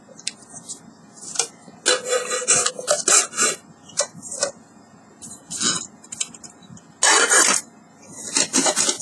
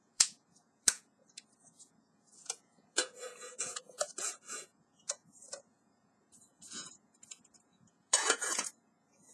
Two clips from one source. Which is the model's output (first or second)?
second